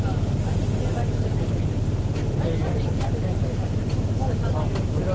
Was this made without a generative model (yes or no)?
yes